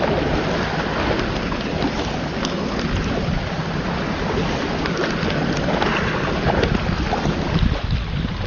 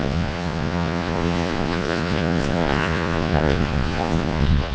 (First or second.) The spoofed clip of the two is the second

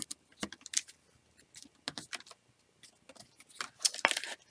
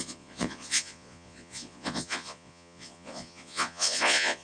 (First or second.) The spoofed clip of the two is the second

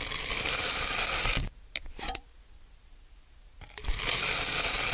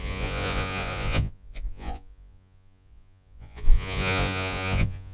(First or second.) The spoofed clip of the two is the second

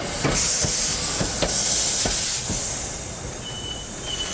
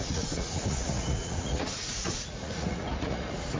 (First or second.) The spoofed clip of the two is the second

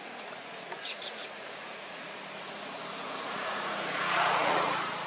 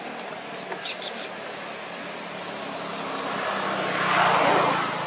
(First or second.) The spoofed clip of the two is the first